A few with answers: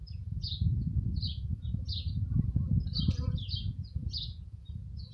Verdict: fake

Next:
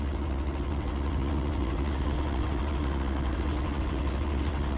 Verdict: fake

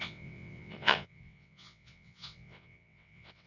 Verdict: fake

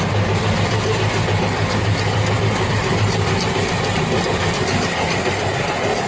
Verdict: real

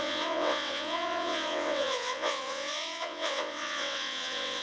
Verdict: fake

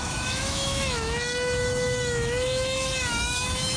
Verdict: fake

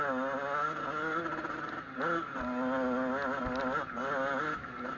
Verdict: real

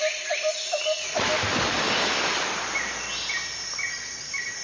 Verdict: real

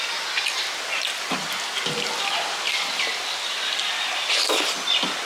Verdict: real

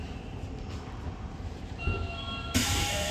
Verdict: fake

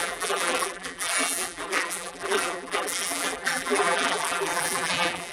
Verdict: fake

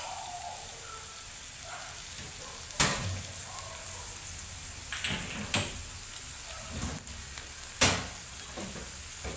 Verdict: real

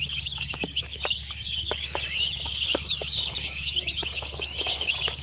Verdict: fake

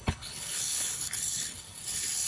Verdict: fake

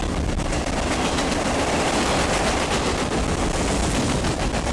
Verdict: real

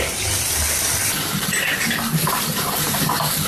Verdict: real